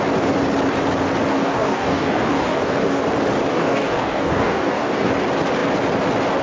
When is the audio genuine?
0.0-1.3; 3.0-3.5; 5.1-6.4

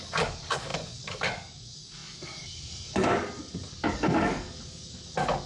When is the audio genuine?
none